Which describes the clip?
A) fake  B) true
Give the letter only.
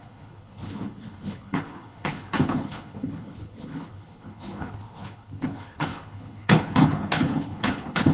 A